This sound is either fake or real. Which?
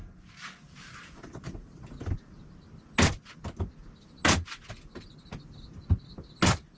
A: real